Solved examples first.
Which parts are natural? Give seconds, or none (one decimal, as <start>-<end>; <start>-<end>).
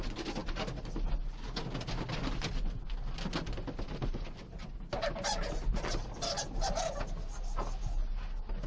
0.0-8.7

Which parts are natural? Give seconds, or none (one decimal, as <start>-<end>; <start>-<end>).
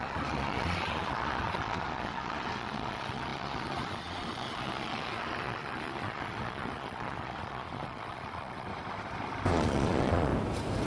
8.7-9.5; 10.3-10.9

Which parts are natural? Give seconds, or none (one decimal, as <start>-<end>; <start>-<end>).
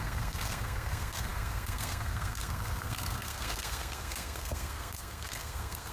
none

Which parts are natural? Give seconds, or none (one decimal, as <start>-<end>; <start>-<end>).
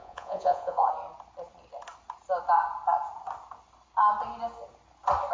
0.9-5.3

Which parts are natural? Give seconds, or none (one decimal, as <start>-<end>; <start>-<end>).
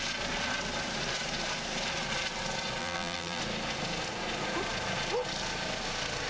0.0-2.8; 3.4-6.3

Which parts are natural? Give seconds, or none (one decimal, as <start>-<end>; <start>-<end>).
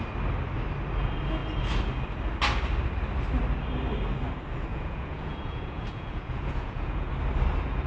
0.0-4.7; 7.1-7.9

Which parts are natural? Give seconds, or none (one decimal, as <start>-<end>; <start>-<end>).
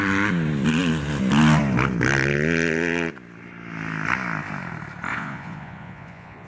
0.0-5.1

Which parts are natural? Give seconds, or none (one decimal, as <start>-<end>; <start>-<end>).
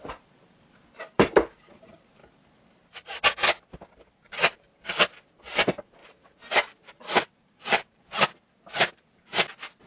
2.2-4.1